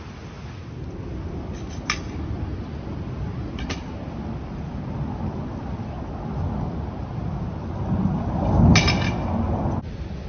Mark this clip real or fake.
real